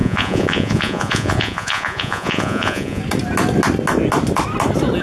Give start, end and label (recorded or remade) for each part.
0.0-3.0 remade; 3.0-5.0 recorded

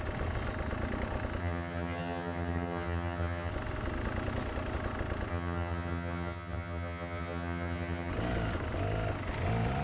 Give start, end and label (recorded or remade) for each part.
0.0-1.4 recorded; 1.4-3.5 remade; 3.5-5.3 recorded; 5.3-8.1 remade; 8.1-9.8 recorded

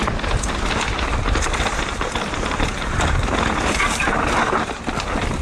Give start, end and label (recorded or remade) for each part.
0.0-5.4 recorded